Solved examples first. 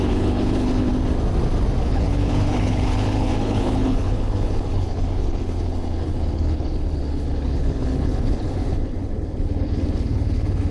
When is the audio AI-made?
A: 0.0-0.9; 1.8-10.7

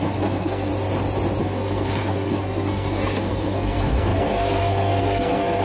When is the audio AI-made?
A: 0.0-0.7; 1.4-5.6

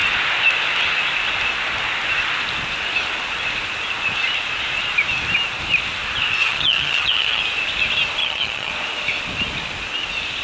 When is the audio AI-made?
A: 6.4-7.4; 8.2-8.7